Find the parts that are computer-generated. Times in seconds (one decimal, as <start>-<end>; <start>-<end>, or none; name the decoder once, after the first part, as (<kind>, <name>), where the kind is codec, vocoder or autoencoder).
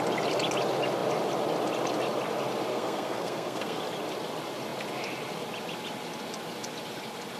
2.7-3.8 (codec, SNAC)